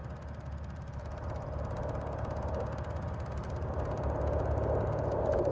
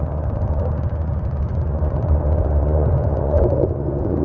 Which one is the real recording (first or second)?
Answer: first